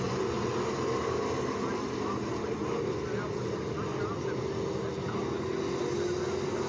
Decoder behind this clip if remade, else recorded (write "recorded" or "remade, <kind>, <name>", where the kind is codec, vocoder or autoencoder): recorded